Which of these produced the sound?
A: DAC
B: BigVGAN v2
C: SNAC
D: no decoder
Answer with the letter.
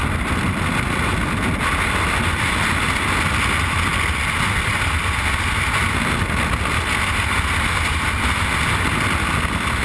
D